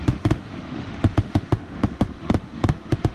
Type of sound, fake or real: fake